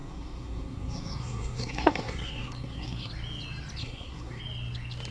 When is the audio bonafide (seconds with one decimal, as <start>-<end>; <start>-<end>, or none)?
3.1-3.8; 4.4-5.1